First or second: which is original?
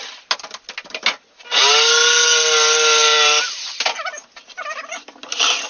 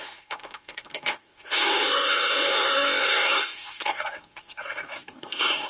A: first